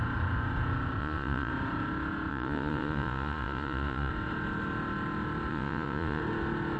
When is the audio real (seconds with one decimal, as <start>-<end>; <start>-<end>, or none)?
0.0-1.0; 1.5-2.3; 4.1-5.5; 6.2-6.8

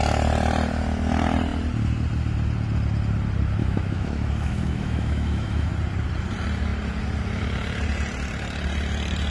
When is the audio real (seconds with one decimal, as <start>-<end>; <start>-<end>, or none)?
0.0-3.6; 5.7-9.3

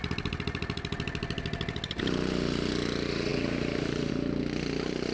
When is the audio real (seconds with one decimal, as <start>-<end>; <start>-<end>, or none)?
0.0-3.3; 4.1-5.1

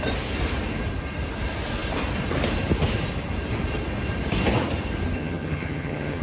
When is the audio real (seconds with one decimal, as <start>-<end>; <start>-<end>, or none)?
0.0-5.2

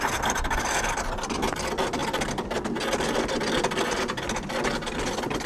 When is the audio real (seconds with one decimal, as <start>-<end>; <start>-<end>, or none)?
0.0-5.5